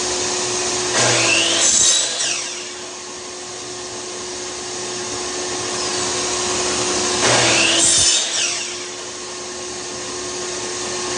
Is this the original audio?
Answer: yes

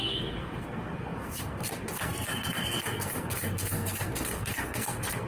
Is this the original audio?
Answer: no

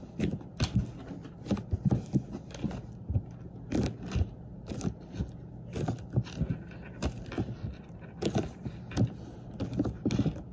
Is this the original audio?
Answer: yes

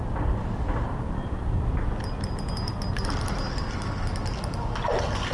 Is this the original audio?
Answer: yes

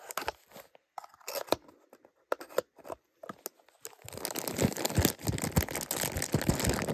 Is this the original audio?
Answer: yes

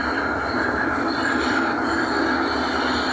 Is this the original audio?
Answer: yes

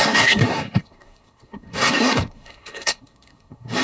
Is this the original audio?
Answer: no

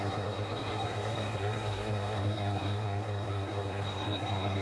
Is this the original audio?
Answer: no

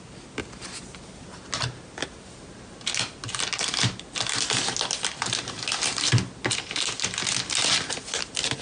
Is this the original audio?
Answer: yes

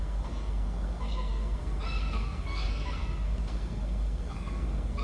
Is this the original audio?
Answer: no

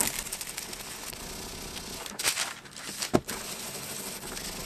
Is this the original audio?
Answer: yes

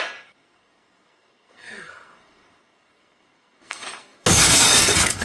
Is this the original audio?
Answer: no